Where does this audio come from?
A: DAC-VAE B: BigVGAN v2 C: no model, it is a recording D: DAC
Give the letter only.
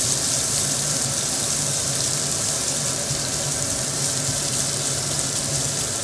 C